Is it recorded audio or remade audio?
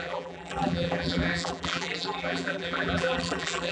remade